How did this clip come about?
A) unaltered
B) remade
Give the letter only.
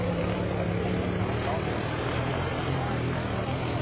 A